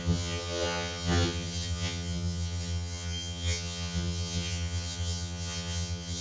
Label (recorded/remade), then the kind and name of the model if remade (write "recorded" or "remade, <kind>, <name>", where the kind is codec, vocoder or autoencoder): remade, vocoder, HiFi-GAN